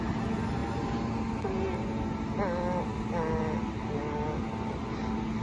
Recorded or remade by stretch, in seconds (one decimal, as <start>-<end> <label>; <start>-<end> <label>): 0.0-5.4 recorded